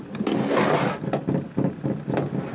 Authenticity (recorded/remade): recorded